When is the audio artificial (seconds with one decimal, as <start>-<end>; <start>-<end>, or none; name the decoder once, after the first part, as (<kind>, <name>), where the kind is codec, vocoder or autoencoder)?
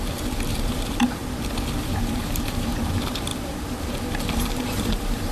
0.0-1.2 (vocoder, BigVGAN v2); 1.8-5.3